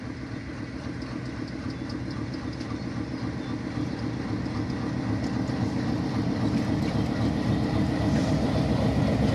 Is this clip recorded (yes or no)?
yes